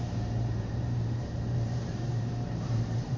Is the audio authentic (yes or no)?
no